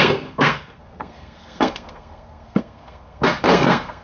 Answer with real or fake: fake